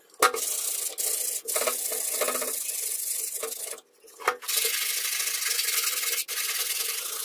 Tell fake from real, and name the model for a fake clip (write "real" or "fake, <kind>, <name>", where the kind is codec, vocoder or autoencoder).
real